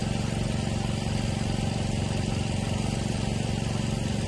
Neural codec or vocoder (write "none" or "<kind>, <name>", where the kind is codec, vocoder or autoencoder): none